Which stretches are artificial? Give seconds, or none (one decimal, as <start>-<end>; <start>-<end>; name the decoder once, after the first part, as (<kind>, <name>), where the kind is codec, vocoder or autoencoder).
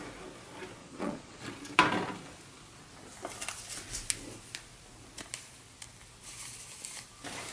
0.8-1.4 (vocoder, Vocos)